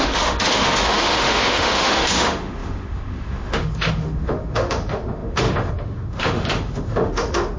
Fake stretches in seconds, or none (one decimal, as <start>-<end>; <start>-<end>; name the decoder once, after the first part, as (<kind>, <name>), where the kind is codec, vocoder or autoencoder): 0.0-7.6 (autoencoder, DAC-VAE)